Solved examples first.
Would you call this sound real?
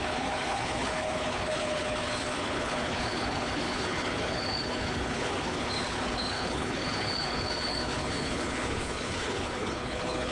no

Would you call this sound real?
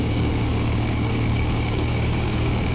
no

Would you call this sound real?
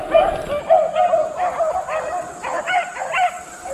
yes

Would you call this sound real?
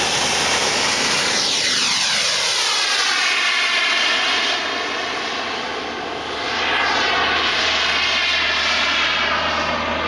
yes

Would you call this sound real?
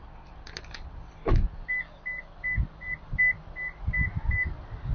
yes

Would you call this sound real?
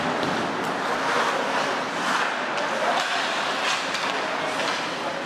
yes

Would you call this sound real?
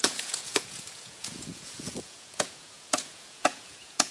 no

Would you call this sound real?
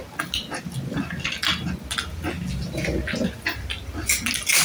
yes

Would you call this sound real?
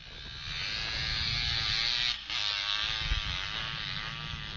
yes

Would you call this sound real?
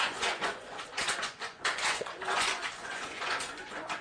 no